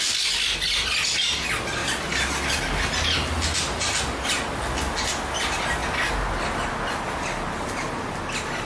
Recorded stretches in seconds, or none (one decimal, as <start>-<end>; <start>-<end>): 0.0-8.7